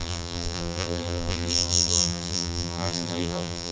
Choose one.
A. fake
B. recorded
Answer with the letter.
A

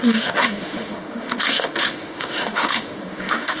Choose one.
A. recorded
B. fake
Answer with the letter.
B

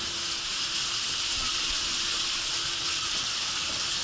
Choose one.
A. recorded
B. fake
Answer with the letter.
A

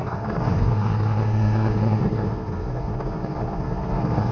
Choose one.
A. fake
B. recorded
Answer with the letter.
A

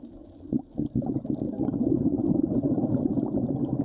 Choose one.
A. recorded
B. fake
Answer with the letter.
A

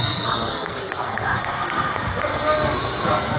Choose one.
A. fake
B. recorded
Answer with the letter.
A